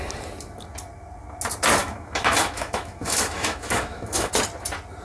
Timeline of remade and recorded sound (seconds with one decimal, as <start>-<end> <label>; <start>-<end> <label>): 0.0-1.8 recorded; 1.8-4.3 remade; 4.3-5.0 recorded